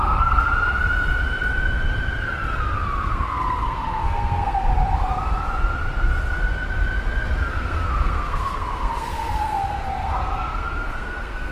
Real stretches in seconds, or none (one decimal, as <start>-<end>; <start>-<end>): 0.5-3.0; 4.7-7.5